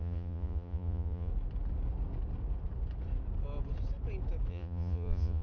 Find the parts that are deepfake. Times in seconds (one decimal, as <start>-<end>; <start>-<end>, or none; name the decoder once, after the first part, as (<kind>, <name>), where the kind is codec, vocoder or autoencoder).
0.0-1.3 (vocoder, Vocos); 4.5-5.4